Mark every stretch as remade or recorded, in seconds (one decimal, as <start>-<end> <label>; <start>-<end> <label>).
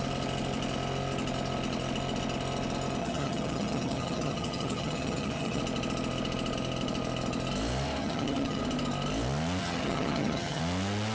0.0-3.0 recorded; 3.0-5.6 remade; 5.6-8.0 recorded; 8.0-8.6 remade; 8.6-9.6 recorded; 9.6-10.6 remade; 10.6-11.1 recorded